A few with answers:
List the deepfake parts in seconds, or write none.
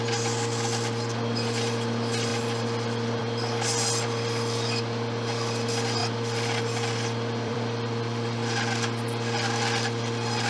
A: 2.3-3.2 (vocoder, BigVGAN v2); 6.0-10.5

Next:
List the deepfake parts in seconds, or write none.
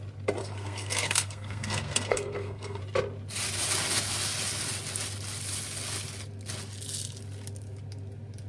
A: 0.4-2.8 (codec, SNAC)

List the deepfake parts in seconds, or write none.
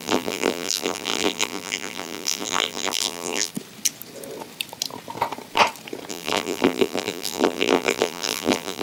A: 0.0-3.5 (vocoder, BigVGAN v2); 6.1-8.8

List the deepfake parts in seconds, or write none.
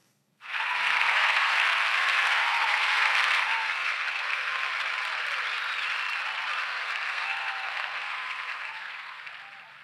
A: 0.0-4.7 (codec, SNAC); 6.6-9.3